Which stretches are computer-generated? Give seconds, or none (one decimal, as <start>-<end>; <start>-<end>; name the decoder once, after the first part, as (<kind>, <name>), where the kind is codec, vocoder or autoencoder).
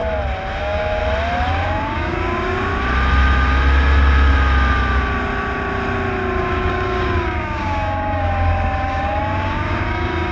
0.6-1.0 (codec, DAC); 1.5-2.7; 6.4-10.3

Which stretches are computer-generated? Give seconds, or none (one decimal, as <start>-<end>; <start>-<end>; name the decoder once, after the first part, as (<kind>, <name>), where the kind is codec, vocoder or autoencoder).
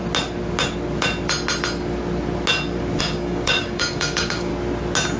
3.0-4.5 (codec, DAC)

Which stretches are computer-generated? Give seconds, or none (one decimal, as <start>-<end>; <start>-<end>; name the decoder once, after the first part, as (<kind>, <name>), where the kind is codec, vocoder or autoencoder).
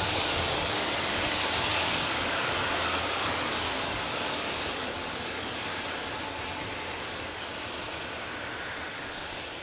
0.0-5.7 (codec, DAC); 7.0-7.5; 8.9-9.6